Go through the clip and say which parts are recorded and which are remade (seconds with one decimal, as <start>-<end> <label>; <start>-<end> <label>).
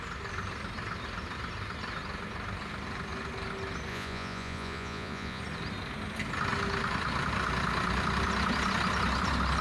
0.0-3.9 recorded; 3.9-5.4 remade; 5.4-9.6 recorded